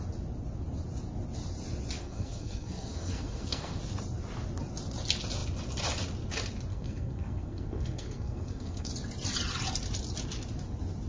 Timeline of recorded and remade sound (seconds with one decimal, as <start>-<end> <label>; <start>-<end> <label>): 0.0-2.0 recorded; 2.0-3.8 remade; 3.8-6.7 recorded; 6.7-8.9 remade; 8.9-11.1 recorded